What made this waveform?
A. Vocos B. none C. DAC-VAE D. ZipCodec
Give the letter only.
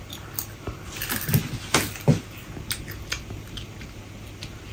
B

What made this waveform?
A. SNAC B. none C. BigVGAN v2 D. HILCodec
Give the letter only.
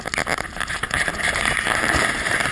B